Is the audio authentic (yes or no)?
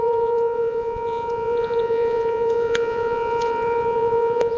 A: no